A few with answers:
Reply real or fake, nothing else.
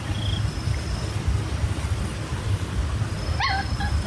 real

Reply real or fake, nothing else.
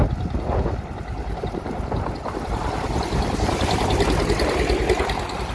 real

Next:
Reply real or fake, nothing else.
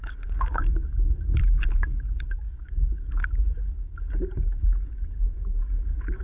fake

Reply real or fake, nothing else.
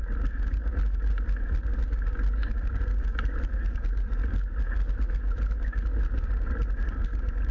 real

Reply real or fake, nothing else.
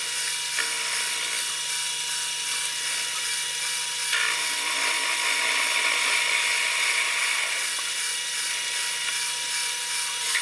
real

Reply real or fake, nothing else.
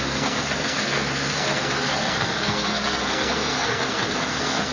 fake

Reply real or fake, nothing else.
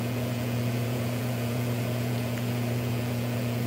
fake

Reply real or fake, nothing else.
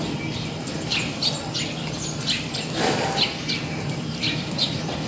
real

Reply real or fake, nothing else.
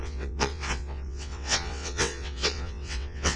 fake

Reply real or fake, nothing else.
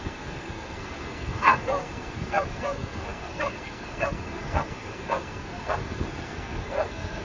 fake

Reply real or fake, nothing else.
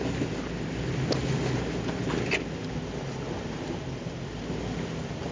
real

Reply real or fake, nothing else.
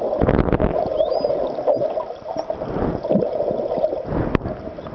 real